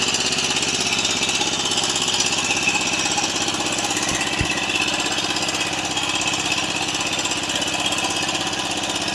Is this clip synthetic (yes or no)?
no